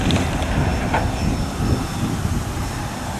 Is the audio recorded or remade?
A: recorded